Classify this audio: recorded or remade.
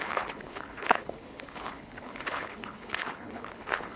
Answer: remade